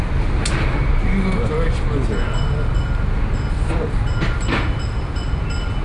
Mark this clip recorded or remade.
recorded